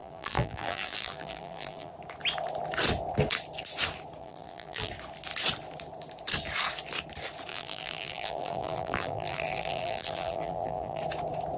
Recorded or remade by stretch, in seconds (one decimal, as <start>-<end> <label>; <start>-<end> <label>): 0.0-1.9 remade; 1.9-4.2 recorded; 4.2-4.9 remade; 4.9-7.5 recorded; 7.5-11.0 remade; 11.0-11.6 recorded